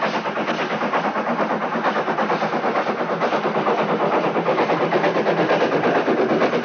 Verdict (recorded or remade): recorded